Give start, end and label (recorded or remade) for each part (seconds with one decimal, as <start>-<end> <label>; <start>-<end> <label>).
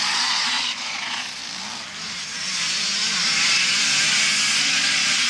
0.0-1.4 remade; 1.4-4.6 recorded; 4.6-5.3 remade